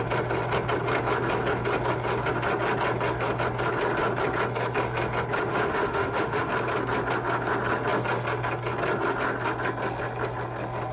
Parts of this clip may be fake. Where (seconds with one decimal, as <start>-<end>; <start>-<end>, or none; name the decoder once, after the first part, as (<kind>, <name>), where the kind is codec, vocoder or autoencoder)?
5.5-6.5 (autoencoder, DAC-VAE)